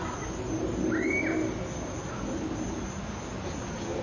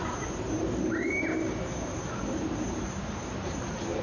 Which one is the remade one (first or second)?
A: second